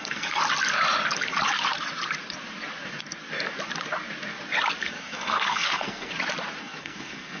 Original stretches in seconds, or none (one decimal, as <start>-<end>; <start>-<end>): 0.4-4.8; 6.1-6.6